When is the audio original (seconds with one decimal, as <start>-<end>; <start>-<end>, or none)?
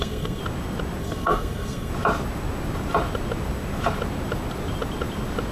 0.4-1.0; 1.9-5.5